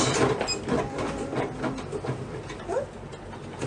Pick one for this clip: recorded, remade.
recorded